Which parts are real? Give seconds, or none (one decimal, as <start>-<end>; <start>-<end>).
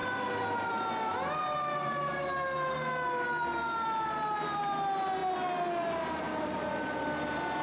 0.0-7.6